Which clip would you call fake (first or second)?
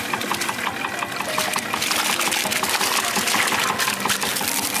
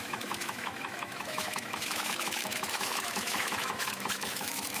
second